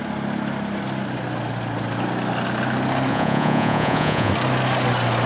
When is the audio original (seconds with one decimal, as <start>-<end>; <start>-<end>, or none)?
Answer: 0.0-3.1; 4.3-5.3